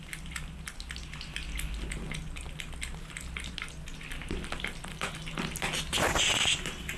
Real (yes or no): yes